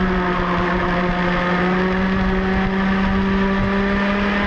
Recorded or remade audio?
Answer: recorded